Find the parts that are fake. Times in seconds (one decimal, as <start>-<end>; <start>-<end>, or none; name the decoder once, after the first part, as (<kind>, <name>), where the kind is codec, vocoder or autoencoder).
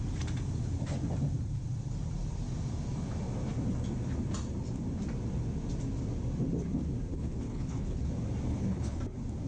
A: 7.1-8.1 (codec, HILCodec); 8.5-9.0